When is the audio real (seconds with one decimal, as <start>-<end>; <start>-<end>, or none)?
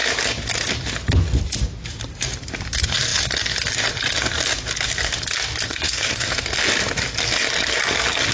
0.0-5.7; 6.3-8.3